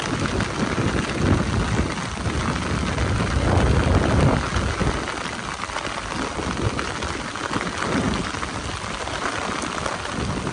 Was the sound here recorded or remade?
recorded